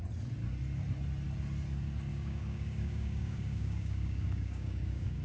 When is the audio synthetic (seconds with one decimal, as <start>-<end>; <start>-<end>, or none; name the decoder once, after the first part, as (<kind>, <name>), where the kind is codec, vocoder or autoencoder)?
2.1-5.2 (codec, DAC)